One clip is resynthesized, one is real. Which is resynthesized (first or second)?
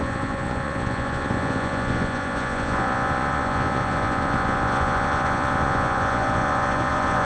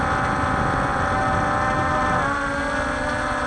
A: first